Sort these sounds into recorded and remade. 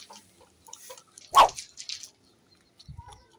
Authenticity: recorded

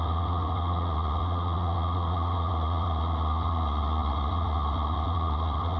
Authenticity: remade